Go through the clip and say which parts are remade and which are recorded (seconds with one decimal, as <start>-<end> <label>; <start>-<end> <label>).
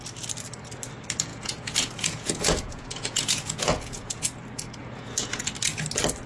0.0-1.3 recorded; 1.3-4.2 remade; 4.2-4.8 recorded; 4.8-5.4 remade; 5.4-6.3 recorded